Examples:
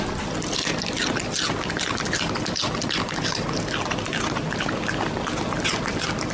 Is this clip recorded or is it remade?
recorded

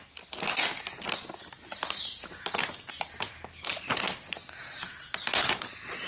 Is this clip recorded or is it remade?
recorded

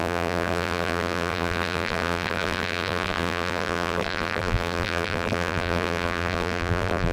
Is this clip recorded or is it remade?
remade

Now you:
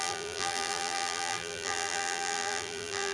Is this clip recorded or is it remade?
remade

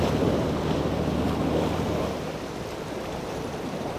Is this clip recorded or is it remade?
remade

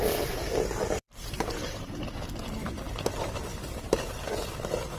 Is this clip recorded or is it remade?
remade